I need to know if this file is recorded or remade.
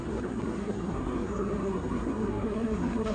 remade